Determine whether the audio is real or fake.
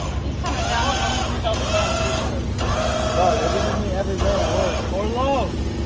real